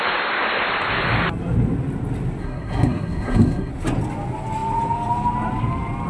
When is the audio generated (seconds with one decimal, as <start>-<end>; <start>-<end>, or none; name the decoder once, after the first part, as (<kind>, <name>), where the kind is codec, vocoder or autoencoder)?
2.4-3.7 (codec, SNAC)